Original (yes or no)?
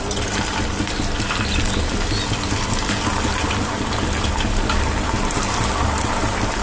yes